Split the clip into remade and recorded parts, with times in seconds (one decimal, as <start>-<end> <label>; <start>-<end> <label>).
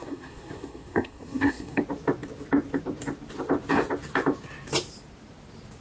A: 0.0-1.8 remade; 1.8-5.8 recorded